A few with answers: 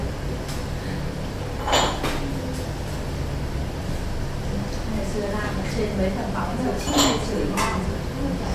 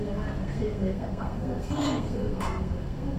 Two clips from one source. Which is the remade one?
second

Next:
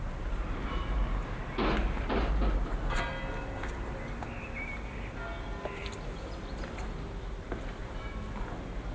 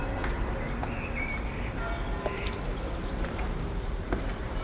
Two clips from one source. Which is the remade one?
second